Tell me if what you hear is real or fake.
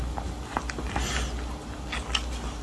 real